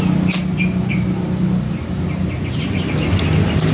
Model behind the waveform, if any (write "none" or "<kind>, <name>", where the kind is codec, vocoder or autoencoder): none